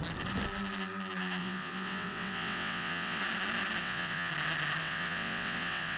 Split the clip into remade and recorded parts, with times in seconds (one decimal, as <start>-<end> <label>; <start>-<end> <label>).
0.0-1.4 recorded; 1.4-3.2 remade; 3.2-3.8 recorded; 3.8-4.3 remade; 4.3-4.8 recorded; 4.8-6.0 remade